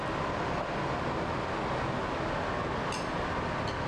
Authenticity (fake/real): real